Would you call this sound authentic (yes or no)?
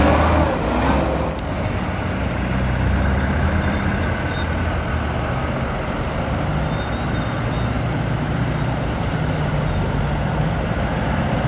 yes